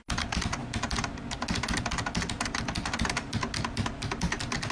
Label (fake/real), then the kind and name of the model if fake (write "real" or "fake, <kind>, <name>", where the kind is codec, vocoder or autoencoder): real